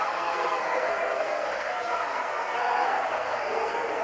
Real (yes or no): no